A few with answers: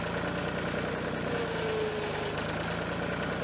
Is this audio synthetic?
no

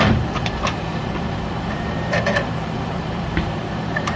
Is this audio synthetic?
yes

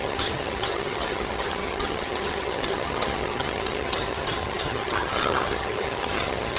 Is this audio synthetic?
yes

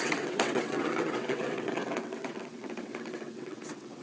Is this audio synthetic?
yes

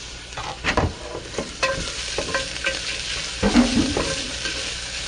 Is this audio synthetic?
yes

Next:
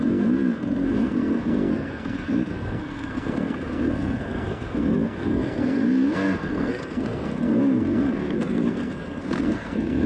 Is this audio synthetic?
yes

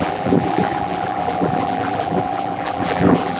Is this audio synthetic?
yes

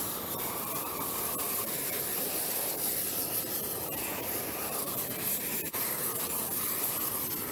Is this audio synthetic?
no